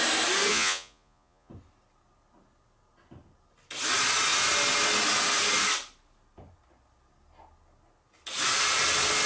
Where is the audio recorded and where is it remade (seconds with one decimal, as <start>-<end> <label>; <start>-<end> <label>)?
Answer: 0.0-0.5 recorded; 0.5-1.5 remade; 1.5-9.3 recorded